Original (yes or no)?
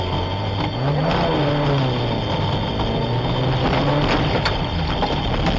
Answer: yes